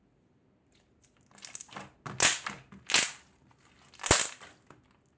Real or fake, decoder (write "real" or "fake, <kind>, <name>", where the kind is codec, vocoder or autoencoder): real